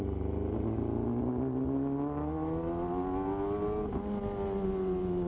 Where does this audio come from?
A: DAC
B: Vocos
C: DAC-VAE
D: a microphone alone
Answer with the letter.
D